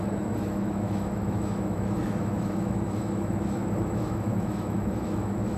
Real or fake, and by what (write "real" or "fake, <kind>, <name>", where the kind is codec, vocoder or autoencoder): fake, autoencoder, DAC-VAE